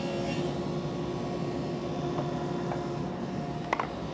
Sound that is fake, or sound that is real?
real